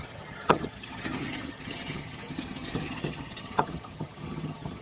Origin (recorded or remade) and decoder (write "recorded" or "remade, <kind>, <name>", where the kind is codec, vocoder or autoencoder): remade, vocoder, HiFi-GAN